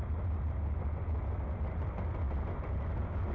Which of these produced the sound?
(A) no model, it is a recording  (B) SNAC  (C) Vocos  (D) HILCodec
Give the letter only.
A